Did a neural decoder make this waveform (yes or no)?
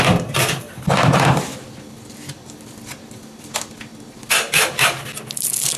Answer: no